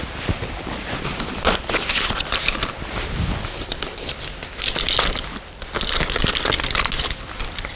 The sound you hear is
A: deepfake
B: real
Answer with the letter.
B